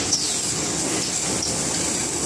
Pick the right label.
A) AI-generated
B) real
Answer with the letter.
B